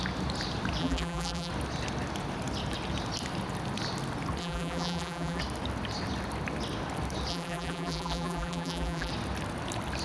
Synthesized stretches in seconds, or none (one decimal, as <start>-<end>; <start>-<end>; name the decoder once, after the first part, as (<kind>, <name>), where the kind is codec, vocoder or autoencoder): 0.8-1.5 (vocoder, BigVGAN v2); 4.4-5.4; 7.3-9.1

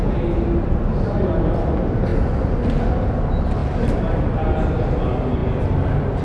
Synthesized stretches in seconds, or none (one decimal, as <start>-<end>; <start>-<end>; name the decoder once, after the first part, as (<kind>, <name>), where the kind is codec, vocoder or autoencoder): none